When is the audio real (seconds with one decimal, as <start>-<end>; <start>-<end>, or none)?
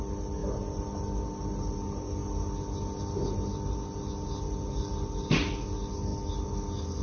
0.0-7.0